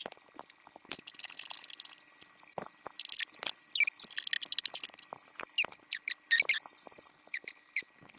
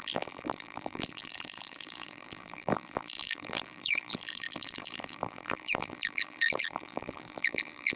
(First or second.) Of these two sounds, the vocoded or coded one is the second